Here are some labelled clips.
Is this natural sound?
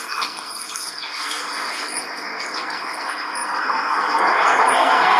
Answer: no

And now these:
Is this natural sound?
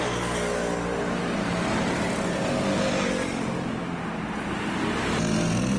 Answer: yes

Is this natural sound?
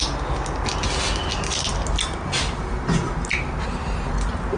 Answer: yes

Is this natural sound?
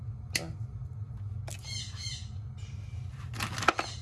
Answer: yes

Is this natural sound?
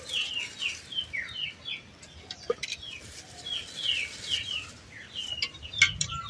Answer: yes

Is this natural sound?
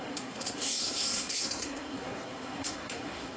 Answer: no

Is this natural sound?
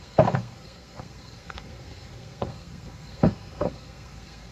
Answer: no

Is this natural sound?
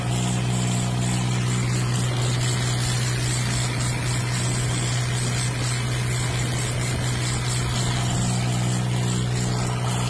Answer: yes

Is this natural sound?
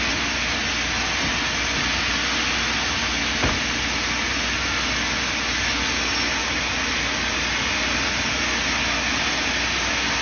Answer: yes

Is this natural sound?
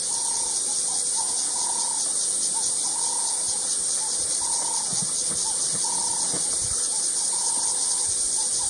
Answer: yes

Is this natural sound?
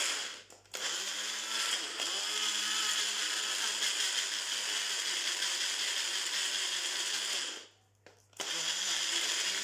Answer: yes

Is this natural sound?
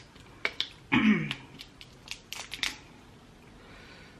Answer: yes